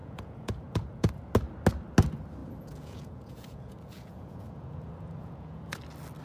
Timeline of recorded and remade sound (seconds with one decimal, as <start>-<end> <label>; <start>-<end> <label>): 0.0-1.1 remade; 1.1-2.4 recorded; 2.4-5.8 remade; 5.8-6.2 recorded